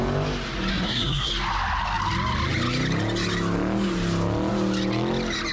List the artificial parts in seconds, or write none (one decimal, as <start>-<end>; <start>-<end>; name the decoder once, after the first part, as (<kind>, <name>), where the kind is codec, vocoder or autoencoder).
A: 0.7-1.3 (codec, SNAC)